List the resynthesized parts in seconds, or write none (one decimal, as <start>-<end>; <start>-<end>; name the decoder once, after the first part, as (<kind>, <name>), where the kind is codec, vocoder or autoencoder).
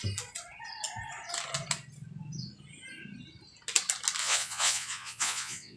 4.2-5.8 (vocoder, Vocos)